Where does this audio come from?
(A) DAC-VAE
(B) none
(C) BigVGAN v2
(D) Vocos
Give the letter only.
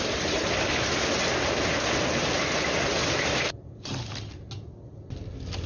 B